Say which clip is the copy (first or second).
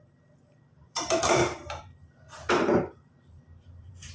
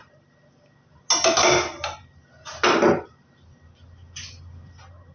first